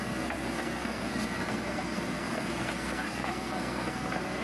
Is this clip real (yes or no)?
no